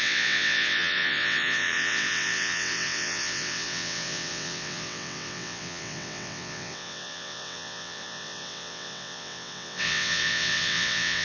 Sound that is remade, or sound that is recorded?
remade